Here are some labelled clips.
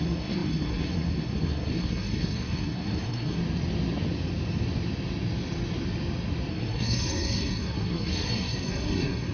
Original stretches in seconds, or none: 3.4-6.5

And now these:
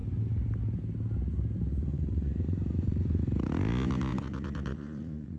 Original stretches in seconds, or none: 0.0-1.9; 3.2-4.1